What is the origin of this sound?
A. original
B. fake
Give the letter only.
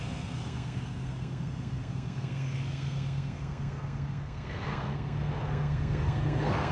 B